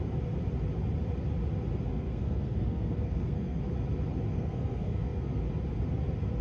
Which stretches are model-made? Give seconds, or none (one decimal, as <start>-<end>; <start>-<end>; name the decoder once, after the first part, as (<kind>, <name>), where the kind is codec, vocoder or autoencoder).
1.9-3.6 (codec, SNAC); 4.3-5.4